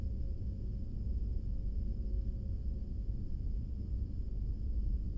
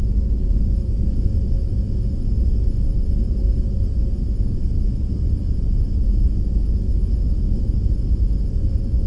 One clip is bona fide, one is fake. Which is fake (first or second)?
second